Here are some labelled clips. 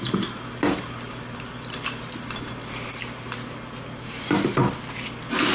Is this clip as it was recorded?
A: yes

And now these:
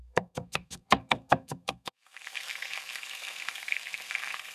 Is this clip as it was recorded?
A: no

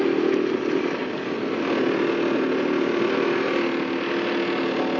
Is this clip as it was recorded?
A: yes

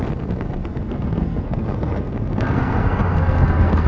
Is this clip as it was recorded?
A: no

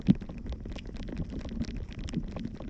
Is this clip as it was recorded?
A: yes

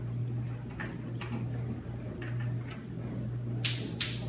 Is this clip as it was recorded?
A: yes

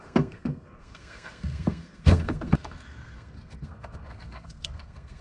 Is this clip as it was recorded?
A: no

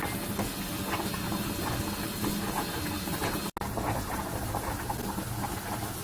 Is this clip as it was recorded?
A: yes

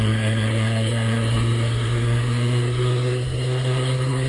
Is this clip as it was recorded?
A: no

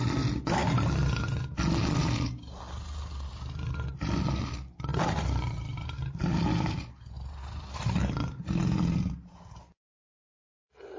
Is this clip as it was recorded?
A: yes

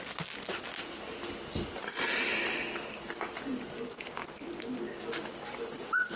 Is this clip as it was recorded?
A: yes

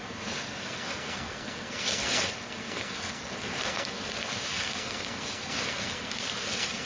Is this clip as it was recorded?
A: no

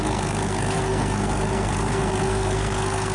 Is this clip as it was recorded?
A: no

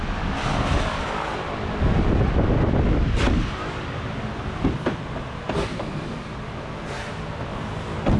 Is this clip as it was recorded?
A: yes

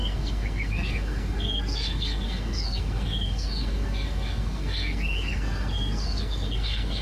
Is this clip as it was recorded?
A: no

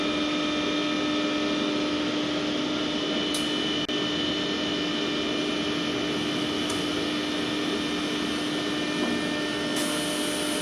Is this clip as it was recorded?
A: yes